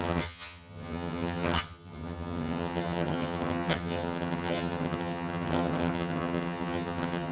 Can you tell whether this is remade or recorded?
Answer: remade